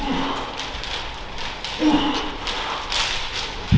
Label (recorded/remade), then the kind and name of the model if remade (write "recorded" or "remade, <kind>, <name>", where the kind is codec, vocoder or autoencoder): recorded